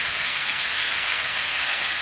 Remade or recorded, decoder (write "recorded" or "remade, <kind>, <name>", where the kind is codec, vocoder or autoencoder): remade, codec, SNAC